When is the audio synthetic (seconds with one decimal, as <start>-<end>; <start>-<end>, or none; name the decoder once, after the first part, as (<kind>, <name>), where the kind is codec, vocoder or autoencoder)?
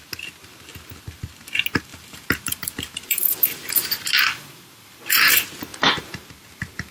1.9-5.3 (vocoder, BigVGAN v2); 5.7-6.9